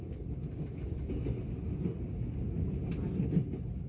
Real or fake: real